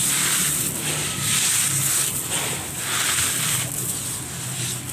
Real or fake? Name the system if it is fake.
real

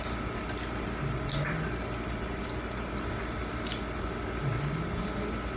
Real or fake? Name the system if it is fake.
real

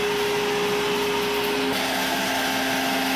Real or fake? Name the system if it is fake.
real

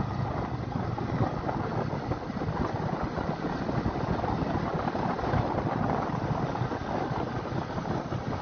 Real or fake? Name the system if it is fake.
real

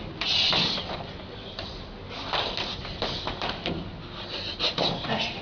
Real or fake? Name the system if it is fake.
real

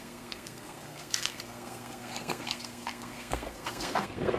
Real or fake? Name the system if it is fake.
fake, codec, SNAC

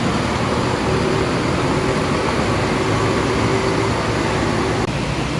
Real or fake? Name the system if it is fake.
real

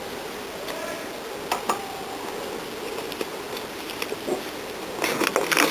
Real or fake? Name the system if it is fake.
real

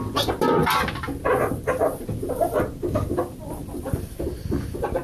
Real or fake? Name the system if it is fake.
real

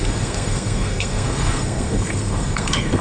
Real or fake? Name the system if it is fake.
fake, codec, SNAC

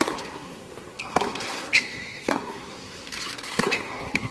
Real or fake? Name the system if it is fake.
fake, codec, SNAC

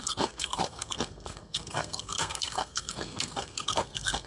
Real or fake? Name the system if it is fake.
fake, codec, SNAC